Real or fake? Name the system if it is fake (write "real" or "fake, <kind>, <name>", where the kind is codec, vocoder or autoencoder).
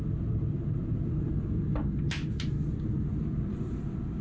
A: real